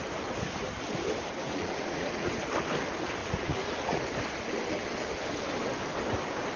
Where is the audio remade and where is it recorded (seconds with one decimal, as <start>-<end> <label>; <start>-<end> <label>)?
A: 0.0-1.4 recorded; 1.4-2.3 remade; 2.3-3.2 recorded; 3.2-4.0 remade; 4.0-6.6 recorded